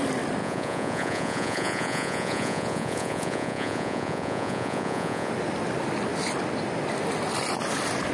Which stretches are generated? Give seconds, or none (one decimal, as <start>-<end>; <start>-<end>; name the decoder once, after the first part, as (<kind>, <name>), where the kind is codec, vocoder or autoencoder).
0.4-5.3 (vocoder, Vocos)